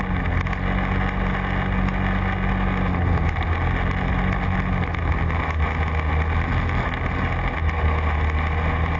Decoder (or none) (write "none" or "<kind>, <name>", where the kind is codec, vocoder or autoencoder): none